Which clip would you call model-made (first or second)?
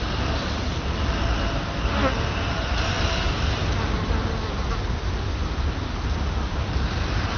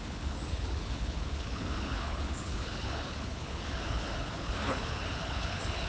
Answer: second